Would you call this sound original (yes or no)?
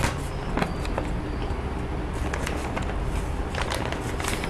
yes